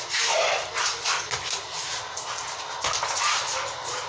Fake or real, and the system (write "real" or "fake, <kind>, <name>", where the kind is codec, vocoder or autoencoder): real